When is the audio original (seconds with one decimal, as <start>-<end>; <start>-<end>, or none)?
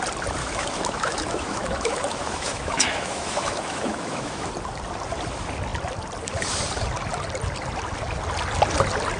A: 0.0-0.4; 4.5-9.2